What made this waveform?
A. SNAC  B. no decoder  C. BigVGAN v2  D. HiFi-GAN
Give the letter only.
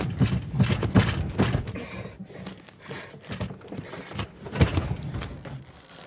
B